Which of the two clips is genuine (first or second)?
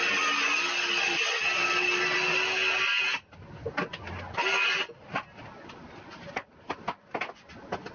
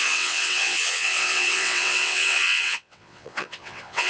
first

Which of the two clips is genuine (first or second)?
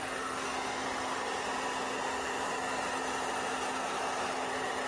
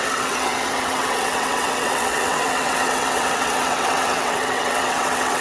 first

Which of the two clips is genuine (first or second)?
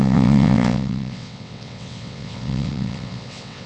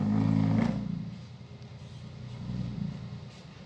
second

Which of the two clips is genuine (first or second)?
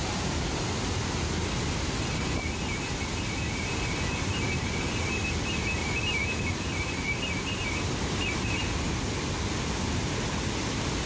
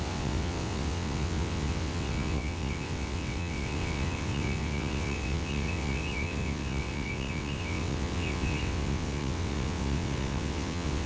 first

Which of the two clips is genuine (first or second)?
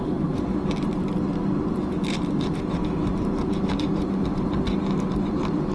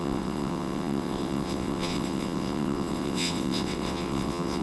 first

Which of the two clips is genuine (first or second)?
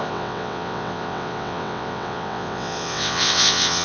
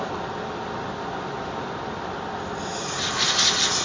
second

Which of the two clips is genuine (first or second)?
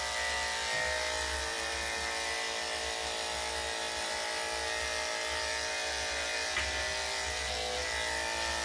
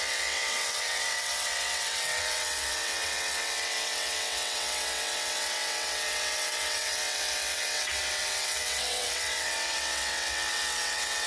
first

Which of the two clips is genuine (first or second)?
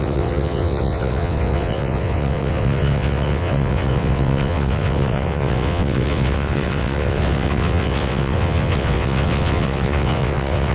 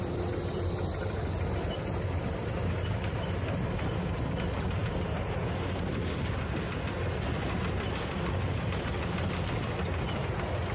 second